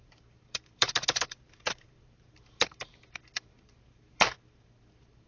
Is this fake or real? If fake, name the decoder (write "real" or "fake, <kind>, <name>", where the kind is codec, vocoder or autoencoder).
fake, vocoder, BigVGAN v2